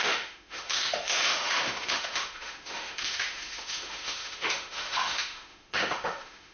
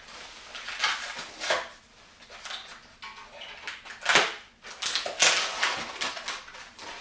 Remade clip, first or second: first